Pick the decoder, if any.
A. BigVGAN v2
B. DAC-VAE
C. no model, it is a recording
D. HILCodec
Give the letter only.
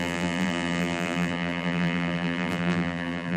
A